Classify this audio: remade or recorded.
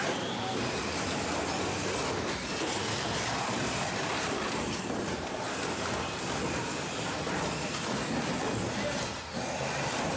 recorded